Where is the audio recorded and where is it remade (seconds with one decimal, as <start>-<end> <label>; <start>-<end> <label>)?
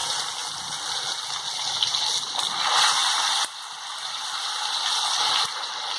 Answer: 0.0-6.0 recorded